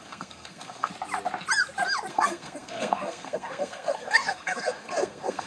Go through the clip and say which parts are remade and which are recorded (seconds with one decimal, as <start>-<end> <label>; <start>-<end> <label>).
0.0-0.9 remade; 0.9-2.1 recorded; 2.1-5.5 remade